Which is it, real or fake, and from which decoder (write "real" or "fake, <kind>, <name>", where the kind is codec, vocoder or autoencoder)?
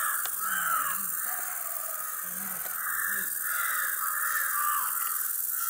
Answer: real